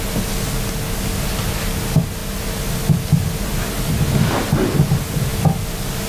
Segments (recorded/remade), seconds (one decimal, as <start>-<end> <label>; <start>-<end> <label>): 0.0-6.1 recorded